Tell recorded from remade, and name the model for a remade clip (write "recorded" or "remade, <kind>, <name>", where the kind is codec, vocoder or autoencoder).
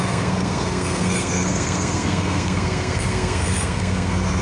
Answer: remade, codec, SNAC